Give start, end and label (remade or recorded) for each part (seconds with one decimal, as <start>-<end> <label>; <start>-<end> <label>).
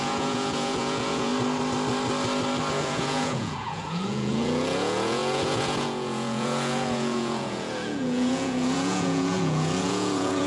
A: 0.0-1.3 remade; 1.3-2.7 recorded; 2.7-10.5 remade